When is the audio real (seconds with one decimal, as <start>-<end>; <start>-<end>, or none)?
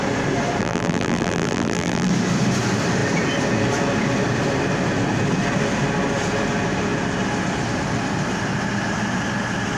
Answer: 0.0-0.6; 2.1-9.8